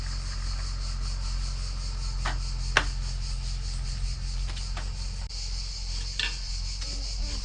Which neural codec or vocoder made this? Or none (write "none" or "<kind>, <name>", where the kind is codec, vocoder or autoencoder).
none